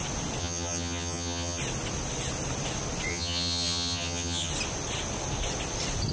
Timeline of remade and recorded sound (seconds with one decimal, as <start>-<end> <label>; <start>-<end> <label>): 0.0-0.4 recorded; 0.4-1.6 remade; 1.6-3.1 recorded; 3.1-4.5 remade; 4.5-6.1 recorded